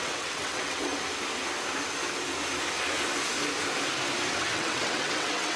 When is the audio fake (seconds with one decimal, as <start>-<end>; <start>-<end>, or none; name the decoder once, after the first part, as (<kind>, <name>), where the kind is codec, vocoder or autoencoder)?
0.0-0.9 (vocoder, WaveNeXt); 4.3-5.6